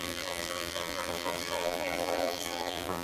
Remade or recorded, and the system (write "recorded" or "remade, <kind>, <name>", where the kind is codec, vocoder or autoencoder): remade, vocoder, BigVGAN v2